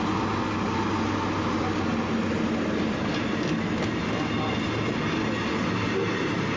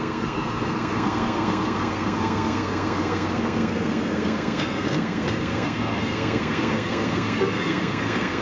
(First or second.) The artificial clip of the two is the second